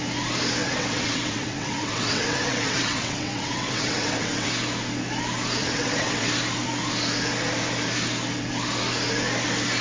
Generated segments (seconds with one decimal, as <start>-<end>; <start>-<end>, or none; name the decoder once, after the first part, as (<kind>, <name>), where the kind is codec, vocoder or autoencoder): 0.6-4.5 (vocoder, WaveNeXt); 5.6-6.3